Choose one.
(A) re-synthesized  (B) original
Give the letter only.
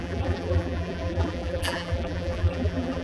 A